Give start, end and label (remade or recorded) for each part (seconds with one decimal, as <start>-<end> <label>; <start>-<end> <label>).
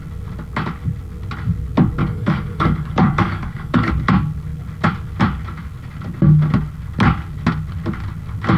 0.0-2.0 recorded; 2.0-3.9 remade; 3.9-8.6 recorded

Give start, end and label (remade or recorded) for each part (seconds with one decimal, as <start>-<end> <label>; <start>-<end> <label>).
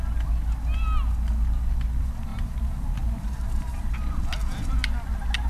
0.0-2.3 recorded; 2.3-3.9 remade; 3.9-5.5 recorded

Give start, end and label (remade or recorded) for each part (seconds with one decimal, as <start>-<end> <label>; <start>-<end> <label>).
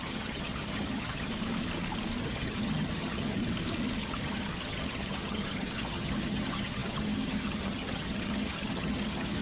0.0-1.3 remade; 1.3-2.2 recorded; 2.2-3.4 remade; 3.4-4.0 recorded; 4.0-9.4 remade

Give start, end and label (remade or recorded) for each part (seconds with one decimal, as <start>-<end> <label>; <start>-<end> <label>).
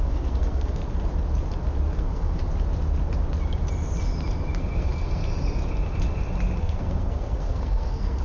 0.0-0.8 remade; 0.8-1.9 recorded; 1.9-2.4 remade; 2.4-4.6 recorded; 4.6-5.2 remade; 5.2-6.6 recorded; 6.6-8.2 remade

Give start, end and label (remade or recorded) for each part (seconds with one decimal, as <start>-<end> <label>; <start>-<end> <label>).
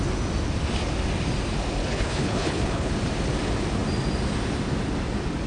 0.0-1.8 recorded; 1.8-2.9 remade; 2.9-5.5 recorded